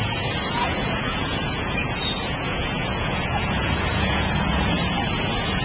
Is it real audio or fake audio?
fake